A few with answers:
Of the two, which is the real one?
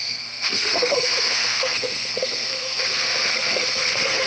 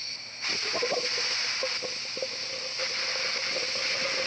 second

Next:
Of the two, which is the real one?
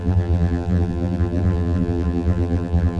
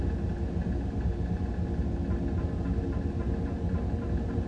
second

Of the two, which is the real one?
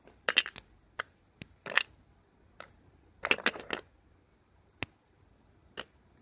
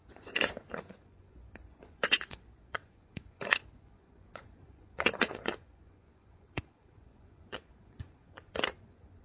first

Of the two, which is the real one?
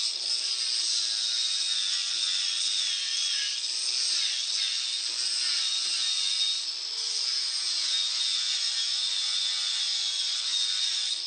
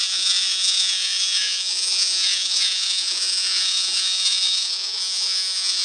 first